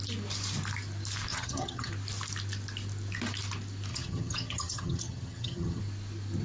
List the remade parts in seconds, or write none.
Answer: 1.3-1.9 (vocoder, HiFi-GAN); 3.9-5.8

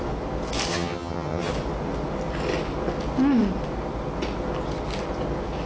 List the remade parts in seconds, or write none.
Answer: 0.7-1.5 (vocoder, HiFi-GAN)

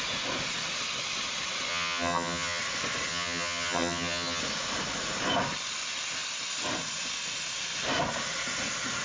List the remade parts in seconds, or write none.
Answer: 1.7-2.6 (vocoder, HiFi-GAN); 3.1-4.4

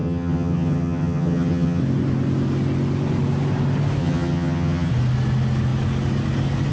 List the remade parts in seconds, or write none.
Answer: 0.0-1.8 (vocoder, HiFi-GAN); 4.0-4.9

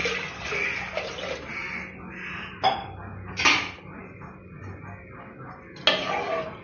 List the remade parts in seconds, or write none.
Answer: none